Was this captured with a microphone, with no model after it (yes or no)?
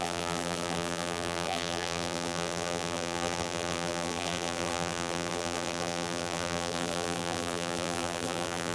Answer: no